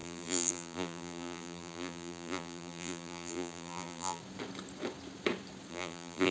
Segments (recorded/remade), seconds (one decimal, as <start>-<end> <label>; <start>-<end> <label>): 0.0-4.2 remade; 4.2-5.7 recorded; 5.7-6.3 remade